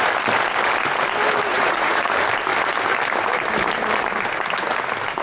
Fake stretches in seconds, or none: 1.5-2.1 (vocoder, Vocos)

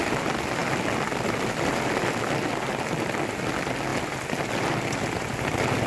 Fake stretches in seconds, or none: none

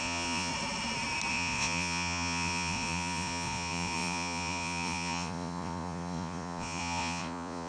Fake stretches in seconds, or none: 0.0-0.5 (vocoder, Vocos); 1.3-7.7

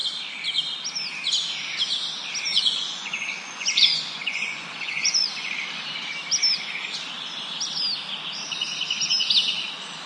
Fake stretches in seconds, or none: 2.5-5.5 (vocoder, Vocos)